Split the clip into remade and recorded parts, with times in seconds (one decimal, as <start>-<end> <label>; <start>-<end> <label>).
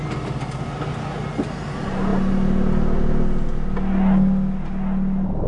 0.0-5.5 recorded